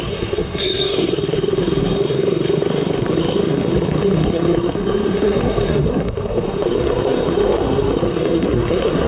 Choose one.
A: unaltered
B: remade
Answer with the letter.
B